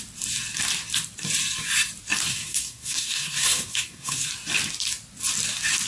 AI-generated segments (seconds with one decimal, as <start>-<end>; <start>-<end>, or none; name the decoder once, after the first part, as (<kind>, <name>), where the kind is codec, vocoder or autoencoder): 2.3-4.3 (codec, SNAC)